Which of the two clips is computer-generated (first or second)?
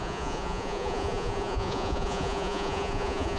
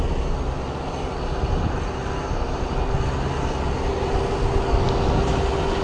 first